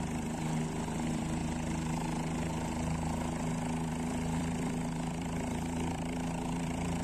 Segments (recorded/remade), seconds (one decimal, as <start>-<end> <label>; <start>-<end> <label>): 0.0-1.4 remade; 1.4-3.9 recorded; 3.9-7.0 remade